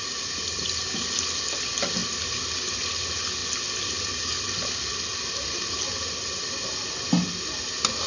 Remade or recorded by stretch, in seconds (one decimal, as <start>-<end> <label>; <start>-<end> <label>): 0.0-8.1 recorded